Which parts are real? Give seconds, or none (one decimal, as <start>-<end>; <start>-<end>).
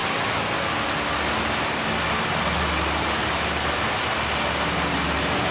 0.0-5.5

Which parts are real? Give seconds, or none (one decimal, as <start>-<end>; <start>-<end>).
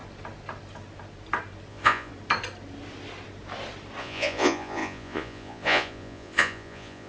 0.0-1.7; 2.1-4.0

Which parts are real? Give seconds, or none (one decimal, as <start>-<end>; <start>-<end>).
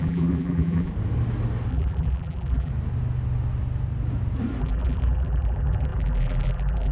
0.9-1.7; 2.7-4.6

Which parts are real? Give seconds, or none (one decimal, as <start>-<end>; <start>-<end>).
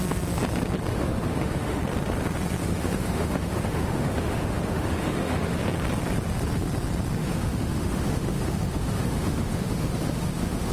0.0-0.9; 1.8-2.6; 5.6-7.2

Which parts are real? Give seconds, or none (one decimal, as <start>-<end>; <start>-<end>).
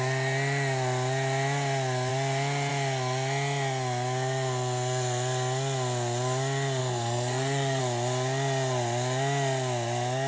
0.0-6.8; 7.8-10.3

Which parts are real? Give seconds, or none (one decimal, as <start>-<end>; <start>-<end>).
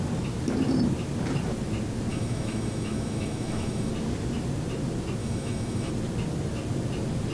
0.0-2.1; 3.9-5.2; 5.9-7.3